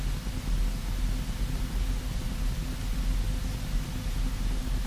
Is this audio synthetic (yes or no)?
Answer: no